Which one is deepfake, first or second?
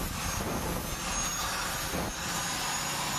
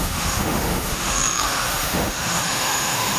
second